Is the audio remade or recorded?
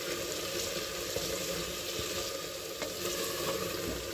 recorded